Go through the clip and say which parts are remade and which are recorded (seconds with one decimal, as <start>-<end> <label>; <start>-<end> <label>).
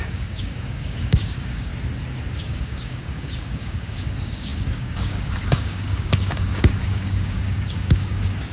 0.0-1.7 remade; 1.7-2.4 recorded; 2.4-8.5 remade